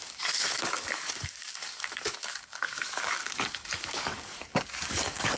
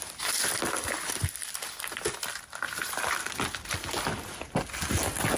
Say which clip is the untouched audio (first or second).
second